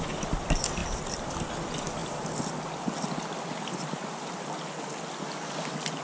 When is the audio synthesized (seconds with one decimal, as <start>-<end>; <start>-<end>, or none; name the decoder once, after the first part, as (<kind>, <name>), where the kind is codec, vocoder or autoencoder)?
none